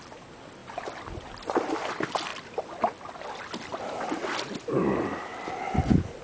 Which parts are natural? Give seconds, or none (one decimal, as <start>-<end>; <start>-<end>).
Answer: 0.0-0.6; 1.9-2.3; 3.2-3.7; 5.2-6.2